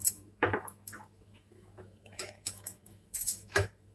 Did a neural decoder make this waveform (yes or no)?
yes